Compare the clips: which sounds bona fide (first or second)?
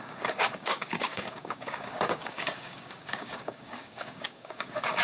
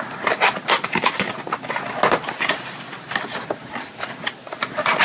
second